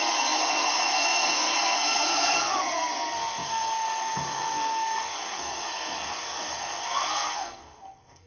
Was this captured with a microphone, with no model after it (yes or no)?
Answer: no